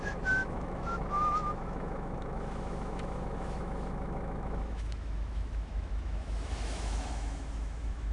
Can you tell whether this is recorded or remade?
remade